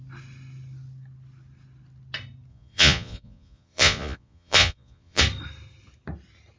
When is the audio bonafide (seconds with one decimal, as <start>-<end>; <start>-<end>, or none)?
0.0-2.5; 5.2-6.6